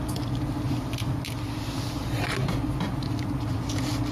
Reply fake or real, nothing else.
real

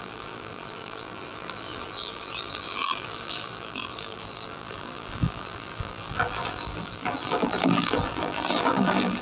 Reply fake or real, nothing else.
fake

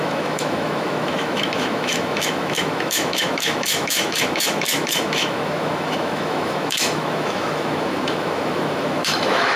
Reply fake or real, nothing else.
fake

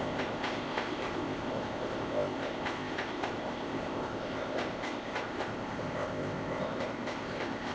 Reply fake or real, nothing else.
fake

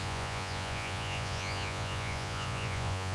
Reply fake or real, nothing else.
fake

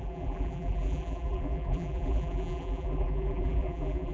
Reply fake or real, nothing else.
fake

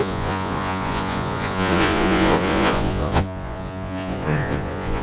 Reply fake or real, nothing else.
fake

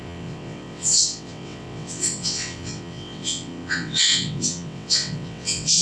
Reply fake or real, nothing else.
fake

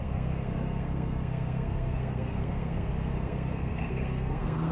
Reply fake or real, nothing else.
fake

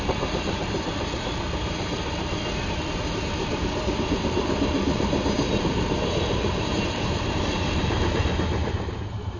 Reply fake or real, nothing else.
fake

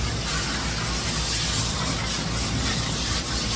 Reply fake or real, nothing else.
real